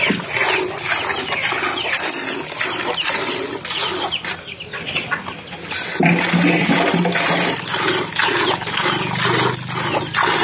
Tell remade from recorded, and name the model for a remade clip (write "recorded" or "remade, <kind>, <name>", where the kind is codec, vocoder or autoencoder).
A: recorded